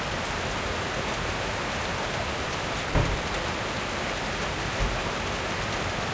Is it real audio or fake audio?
real